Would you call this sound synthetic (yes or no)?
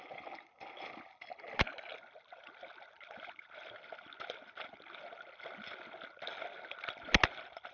no